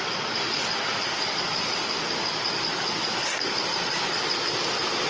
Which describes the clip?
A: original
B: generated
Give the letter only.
A